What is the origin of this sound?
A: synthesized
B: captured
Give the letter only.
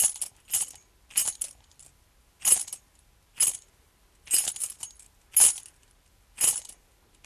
B